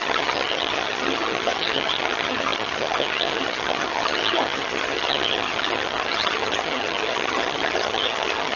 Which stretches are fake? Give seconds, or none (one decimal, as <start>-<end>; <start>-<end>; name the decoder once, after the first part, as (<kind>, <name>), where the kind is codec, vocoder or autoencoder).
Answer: 0.0-8.6 (vocoder, HiFi-GAN)